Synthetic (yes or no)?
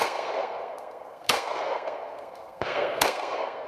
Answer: yes